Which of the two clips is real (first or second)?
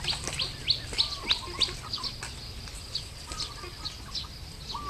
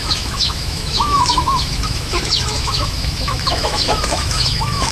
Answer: first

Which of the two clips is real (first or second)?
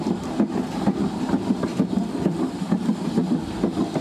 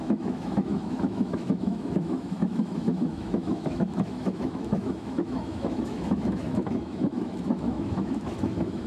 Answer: first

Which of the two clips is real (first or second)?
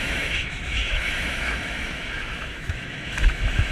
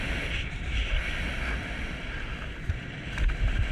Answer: second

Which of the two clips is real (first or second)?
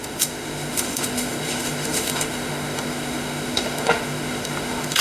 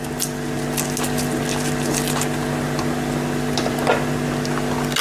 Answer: second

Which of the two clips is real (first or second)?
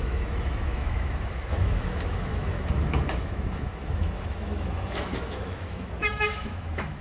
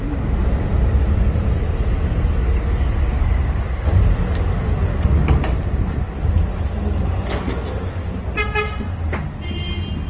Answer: second